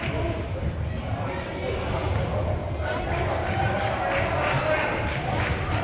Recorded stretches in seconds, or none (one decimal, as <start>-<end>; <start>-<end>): 0.0-5.8